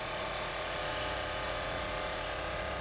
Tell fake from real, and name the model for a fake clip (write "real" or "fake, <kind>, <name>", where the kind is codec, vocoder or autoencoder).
fake, vocoder, Vocos